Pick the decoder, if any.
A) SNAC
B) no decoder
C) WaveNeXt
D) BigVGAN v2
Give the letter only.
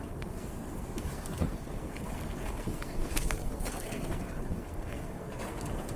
A